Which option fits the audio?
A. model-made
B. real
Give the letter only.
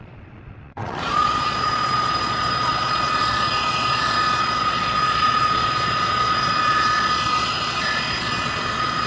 A